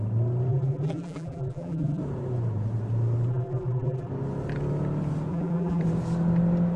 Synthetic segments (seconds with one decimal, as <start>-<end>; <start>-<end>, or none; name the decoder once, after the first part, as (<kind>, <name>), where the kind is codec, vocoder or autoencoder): 0.5-2.0 (vocoder, BigVGAN v2); 3.3-4.1; 5.3-5.8